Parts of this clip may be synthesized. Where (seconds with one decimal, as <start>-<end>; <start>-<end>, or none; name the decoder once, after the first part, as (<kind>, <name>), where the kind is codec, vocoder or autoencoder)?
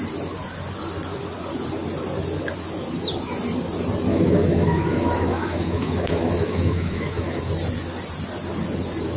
4.1-7.4 (autoencoder, DAC-VAE)